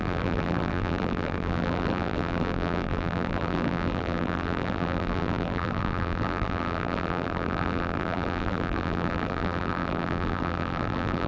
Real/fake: fake